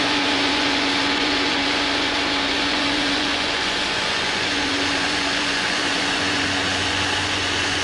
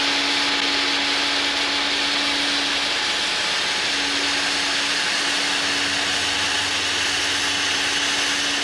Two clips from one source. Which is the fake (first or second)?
first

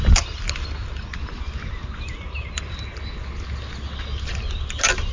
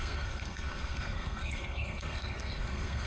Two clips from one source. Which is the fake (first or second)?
second